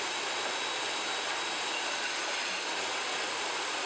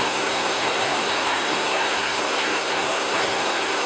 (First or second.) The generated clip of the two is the second